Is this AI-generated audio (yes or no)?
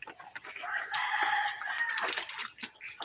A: no